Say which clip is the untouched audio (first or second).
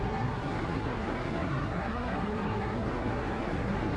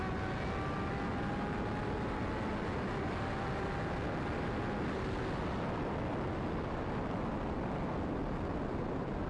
second